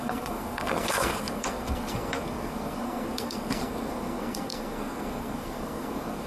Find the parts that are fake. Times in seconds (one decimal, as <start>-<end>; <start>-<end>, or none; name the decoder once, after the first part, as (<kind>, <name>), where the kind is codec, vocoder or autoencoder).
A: 0.0-6.3 (codec, SNAC)